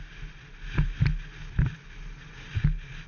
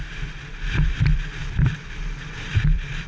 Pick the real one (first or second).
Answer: first